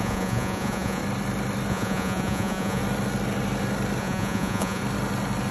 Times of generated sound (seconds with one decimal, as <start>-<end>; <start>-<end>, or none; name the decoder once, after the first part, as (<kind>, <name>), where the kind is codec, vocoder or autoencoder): 0.0-1.0 (vocoder, Vocos); 1.7-2.8; 4.0-4.8